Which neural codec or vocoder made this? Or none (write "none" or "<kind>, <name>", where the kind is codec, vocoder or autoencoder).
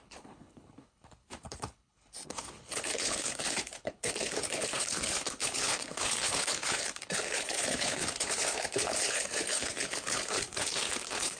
codec, HILCodec